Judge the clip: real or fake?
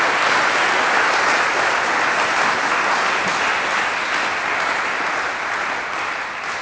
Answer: real